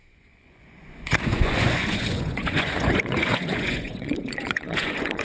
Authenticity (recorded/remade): remade